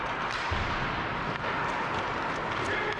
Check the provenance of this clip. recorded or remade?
recorded